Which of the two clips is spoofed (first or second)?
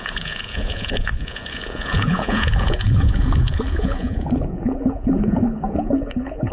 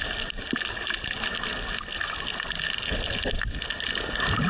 first